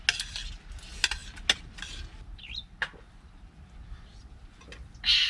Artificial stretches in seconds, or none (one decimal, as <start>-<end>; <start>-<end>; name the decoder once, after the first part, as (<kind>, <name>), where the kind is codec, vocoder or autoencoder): none

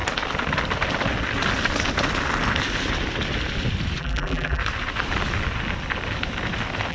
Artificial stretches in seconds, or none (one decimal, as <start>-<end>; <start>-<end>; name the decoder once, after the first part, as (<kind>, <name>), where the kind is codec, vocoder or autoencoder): 4.0-4.6 (vocoder, BigVGAN v2)

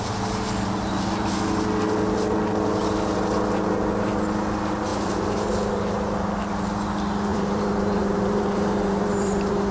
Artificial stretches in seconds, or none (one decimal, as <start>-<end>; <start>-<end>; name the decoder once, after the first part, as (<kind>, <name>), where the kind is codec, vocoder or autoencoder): 4.9-5.5 (vocoder, BigVGAN v2); 7.3-9.7